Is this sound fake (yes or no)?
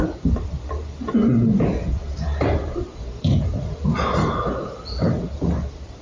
no